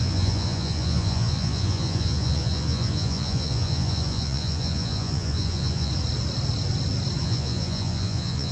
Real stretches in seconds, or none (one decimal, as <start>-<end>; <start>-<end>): 5.9-7.2